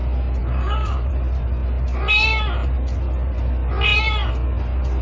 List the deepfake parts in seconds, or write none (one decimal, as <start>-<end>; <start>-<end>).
0.4-1.1